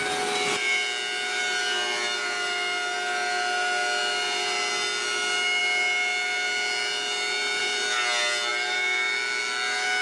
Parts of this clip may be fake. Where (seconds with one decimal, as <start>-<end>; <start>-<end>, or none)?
none